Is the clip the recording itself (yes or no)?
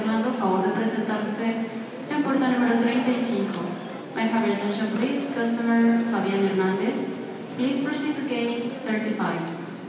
yes